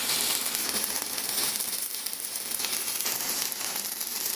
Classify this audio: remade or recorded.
remade